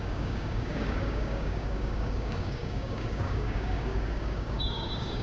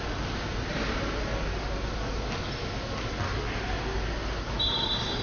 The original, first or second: second